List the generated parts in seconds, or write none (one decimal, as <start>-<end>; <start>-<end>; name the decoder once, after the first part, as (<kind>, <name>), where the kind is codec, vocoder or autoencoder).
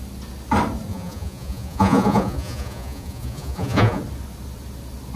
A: 0.9-4.0 (vocoder, Vocos)